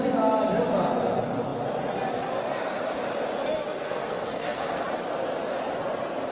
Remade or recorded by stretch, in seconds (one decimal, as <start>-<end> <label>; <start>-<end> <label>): 0.0-3.8 recorded; 3.8-4.8 remade; 4.8-6.3 recorded